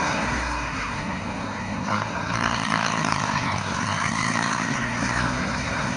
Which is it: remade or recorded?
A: remade